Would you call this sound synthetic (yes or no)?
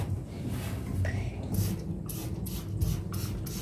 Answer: no